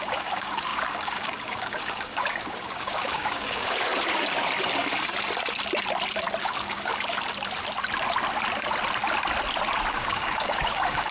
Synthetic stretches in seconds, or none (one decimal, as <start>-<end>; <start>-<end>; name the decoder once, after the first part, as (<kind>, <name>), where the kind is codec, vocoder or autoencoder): 0.0-3.9 (codec, DAC); 6.4-6.9; 9.9-11.1